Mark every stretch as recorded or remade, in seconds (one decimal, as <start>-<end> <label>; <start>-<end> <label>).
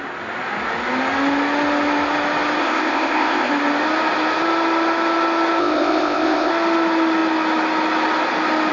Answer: 0.0-2.6 recorded; 2.6-3.5 remade; 3.5-5.6 recorded; 5.6-6.5 remade; 6.5-8.7 recorded